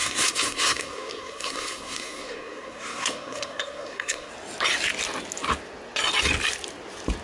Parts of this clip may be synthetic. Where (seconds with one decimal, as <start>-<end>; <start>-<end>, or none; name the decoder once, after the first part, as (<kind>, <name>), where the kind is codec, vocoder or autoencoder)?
0.0-4.3 (codec, SNAC)